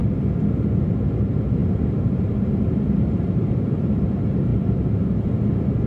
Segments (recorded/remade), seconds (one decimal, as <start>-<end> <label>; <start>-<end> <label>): 0.0-1.2 recorded; 1.2-5.9 remade